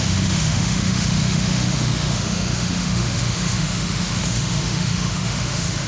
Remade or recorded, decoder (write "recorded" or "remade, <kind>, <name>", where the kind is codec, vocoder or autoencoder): remade, autoencoder, DAC-VAE